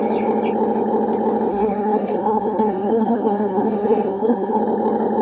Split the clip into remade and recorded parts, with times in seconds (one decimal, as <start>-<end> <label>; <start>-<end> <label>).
0.0-1.5 recorded; 1.5-4.6 remade; 4.6-5.2 recorded